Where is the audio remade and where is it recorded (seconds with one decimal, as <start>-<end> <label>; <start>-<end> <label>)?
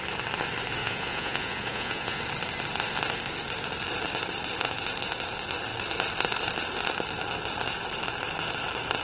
0.0-0.8 recorded; 0.8-2.2 remade; 2.2-9.0 recorded